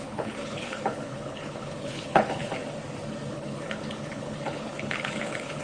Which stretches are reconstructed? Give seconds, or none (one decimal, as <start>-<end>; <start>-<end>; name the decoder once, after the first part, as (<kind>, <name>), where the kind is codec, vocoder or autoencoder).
0.0-2.5 (codec, HILCodec); 3.3-5.6